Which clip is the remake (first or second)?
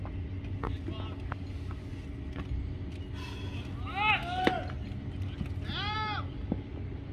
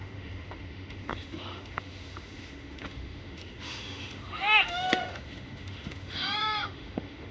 second